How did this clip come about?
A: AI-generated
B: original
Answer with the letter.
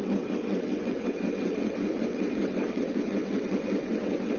A